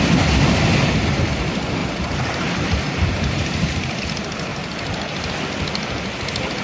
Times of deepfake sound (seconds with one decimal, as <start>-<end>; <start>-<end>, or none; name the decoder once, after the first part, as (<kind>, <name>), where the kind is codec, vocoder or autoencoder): 1.8-4.0 (vocoder, BigVGAN v2); 4.5-5.3